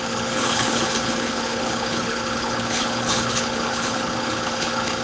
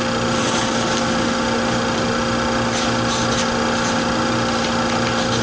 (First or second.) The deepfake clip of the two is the first